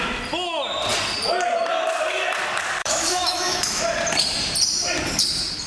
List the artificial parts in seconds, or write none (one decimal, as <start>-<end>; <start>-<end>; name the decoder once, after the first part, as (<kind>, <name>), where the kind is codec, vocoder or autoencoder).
2.8-3.8 (autoencoder, DAC-VAE)